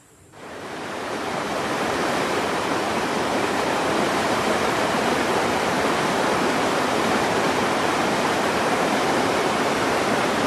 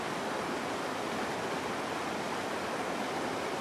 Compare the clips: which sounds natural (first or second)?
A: second